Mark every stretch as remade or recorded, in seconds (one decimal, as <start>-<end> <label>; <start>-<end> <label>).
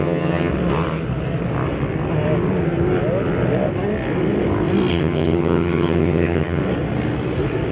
0.0-0.5 remade; 0.5-4.9 recorded; 4.9-6.6 remade; 6.6-7.7 recorded